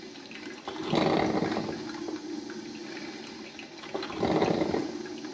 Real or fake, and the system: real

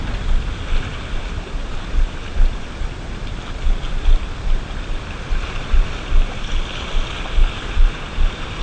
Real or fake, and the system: real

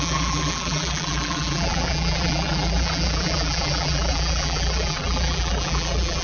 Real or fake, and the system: fake, vocoder, BigVGAN v2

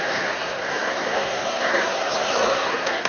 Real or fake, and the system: fake, codec, SNAC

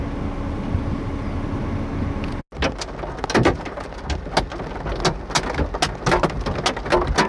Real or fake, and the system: real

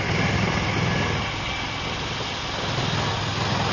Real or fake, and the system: real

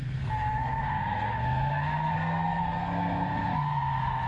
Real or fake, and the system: fake, codec, SNAC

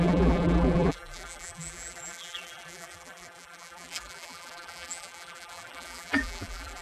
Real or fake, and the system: fake, vocoder, BigVGAN v2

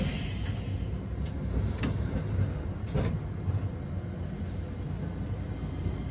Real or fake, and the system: real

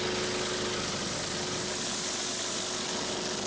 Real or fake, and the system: real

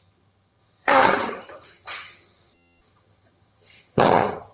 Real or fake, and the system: fake, vocoder, HiFi-GAN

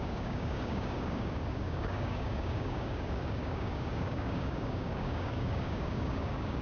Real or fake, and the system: fake, codec, DAC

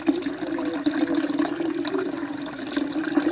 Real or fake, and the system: fake, vocoder, BigVGAN v2